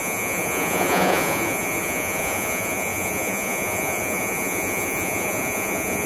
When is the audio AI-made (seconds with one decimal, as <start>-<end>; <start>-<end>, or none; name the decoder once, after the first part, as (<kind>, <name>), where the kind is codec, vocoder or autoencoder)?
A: 0.0-6.1 (vocoder, Vocos)